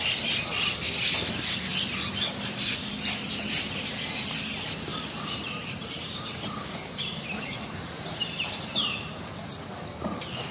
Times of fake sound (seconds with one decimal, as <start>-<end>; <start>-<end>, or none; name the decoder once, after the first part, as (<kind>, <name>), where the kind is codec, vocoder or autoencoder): 4.9-9.2 (vocoder, BigVGAN v2)